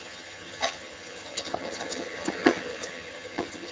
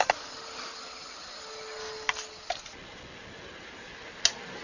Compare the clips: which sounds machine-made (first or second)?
first